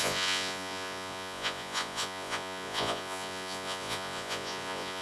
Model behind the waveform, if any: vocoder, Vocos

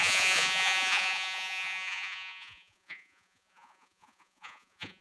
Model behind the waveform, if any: vocoder, Vocos